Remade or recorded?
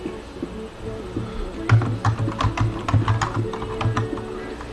recorded